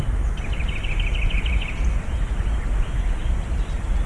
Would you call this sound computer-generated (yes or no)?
no